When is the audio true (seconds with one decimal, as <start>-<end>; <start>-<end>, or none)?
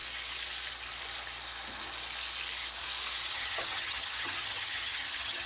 0.0-3.3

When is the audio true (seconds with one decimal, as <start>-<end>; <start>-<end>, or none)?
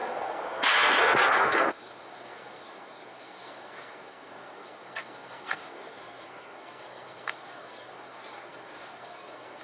none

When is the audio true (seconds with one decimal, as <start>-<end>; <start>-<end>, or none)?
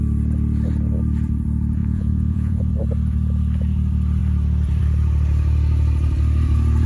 0.0-1.8; 2.7-6.9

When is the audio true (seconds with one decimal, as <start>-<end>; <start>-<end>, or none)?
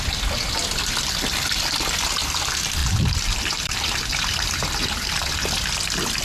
0.0-2.8; 5.2-6.2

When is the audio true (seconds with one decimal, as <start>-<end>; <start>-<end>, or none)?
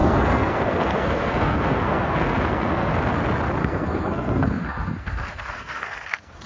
2.9-3.6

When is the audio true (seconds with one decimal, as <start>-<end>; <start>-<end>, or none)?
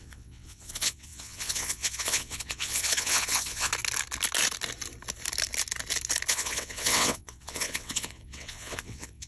3.7-6.3